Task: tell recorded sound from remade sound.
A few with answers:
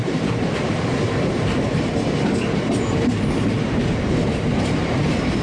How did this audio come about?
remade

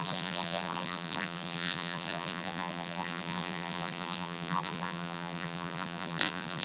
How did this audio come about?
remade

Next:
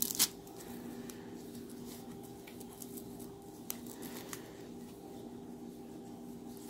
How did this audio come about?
recorded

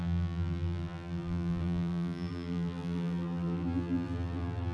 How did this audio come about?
remade